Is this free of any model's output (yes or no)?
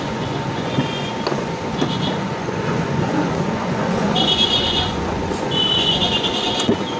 no